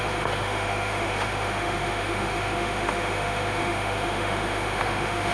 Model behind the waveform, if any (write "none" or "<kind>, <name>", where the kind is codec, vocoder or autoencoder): autoencoder, DAC-VAE